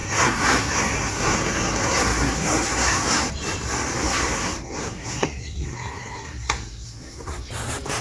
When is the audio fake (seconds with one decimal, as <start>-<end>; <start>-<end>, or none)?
0.0-3.3; 3.9-7.5